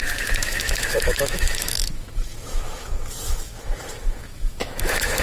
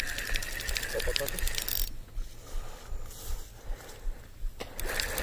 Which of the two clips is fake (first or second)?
first